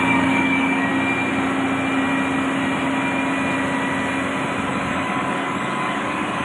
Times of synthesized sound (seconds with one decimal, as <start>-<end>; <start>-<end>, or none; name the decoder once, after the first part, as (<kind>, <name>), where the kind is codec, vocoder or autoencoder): 0.0-0.9 (codec, DAC); 4.7-6.4